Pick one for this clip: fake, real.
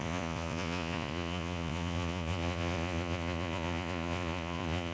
fake